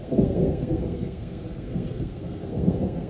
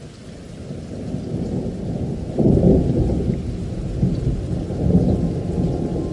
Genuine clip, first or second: second